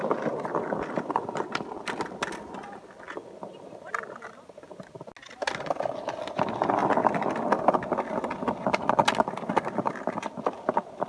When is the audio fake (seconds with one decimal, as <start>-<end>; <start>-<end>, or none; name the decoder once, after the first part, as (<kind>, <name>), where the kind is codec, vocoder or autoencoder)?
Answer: none